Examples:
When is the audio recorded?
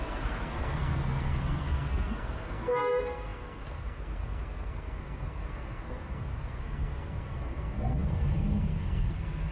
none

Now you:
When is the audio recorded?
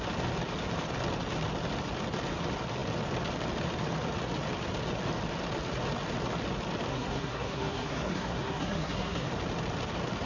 0.0-6.9; 9.3-10.2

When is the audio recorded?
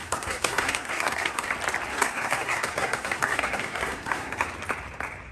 1.5-1.9; 4.5-5.3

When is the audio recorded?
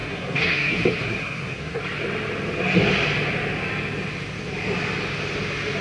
1.8-5.8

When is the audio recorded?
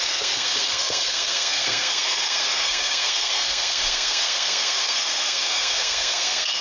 none